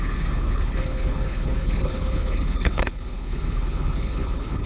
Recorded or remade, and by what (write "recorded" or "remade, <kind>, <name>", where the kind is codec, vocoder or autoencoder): remade, codec, HILCodec